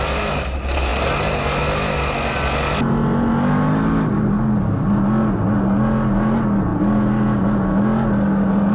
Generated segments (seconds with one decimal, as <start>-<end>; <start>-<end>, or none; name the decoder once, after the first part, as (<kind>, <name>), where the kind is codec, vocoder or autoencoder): none